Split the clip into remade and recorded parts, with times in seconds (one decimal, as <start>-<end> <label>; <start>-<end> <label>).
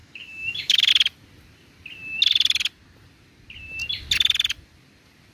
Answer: 0.0-0.9 remade; 0.9-5.3 recorded